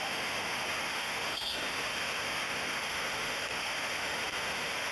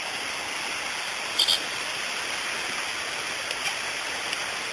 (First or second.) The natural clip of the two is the second